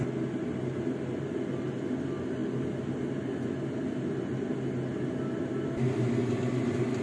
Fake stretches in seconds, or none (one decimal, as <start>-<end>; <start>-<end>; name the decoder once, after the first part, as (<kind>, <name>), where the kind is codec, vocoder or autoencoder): none